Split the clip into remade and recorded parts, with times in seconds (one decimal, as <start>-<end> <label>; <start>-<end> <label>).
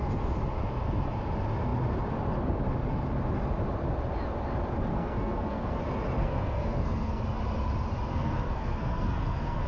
0.0-4.9 recorded; 4.9-5.8 remade; 5.8-6.2 recorded; 6.2-7.2 remade; 7.2-8.1 recorded; 8.1-9.7 remade